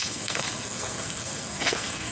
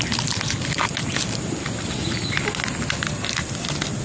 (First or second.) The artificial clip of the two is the first